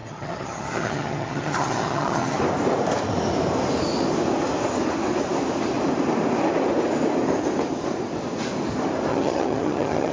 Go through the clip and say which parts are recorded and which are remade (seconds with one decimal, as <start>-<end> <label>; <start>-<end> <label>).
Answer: 0.0-2.4 remade; 2.4-9.1 recorded; 9.1-10.1 remade